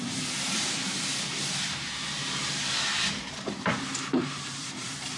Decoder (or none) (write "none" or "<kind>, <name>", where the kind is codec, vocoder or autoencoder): vocoder, BigVGAN v2